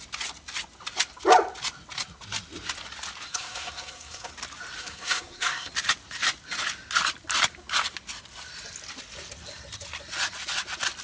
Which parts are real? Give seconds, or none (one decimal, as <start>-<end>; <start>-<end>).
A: 0.0-3.3; 4.3-4.8; 5.7-11.0

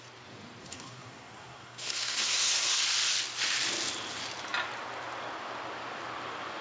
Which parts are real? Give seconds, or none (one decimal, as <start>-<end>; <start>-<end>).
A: 0.0-0.6; 2.8-6.6

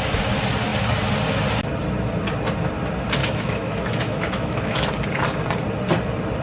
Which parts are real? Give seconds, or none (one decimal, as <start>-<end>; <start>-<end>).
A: 0.0-3.2; 4.9-6.4

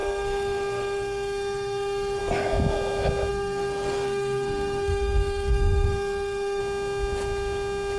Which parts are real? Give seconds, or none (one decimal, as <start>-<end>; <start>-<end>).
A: 2.2-3.3; 6.6-8.0

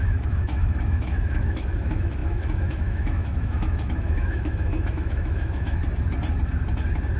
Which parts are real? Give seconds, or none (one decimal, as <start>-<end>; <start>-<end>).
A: 5.8-7.2